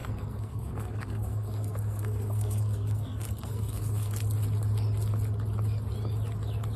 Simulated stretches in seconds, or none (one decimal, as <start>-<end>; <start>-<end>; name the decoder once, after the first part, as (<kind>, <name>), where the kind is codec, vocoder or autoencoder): 0.0-4.1 (codec, SNAC)